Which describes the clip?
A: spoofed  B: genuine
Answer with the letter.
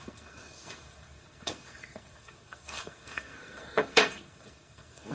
A